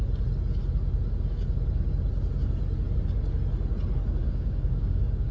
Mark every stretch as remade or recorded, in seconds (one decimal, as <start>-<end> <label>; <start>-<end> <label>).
0.0-4.2 recorded; 4.2-5.3 remade